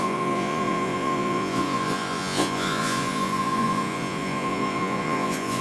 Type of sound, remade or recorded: remade